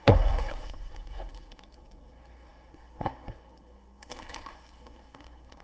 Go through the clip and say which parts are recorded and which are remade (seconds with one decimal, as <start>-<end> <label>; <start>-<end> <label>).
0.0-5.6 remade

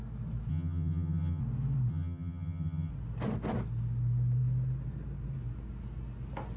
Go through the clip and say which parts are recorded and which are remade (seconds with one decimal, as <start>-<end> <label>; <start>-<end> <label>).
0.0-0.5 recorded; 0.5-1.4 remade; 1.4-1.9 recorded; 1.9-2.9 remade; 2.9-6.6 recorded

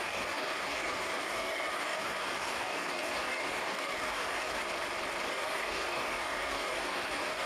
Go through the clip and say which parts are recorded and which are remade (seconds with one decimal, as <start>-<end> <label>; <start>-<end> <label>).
0.0-4.6 remade; 4.6-5.3 recorded; 5.3-7.5 remade